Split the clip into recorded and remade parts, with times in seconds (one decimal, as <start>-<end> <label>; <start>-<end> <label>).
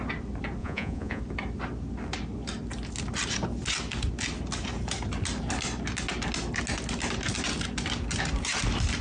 0.0-0.6 recorded; 0.6-1.2 remade; 1.2-9.0 recorded